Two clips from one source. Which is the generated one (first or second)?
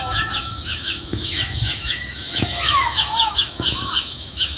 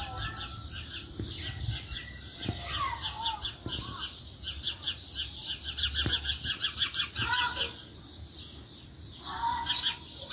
first